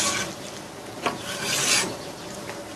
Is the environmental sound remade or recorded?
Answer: recorded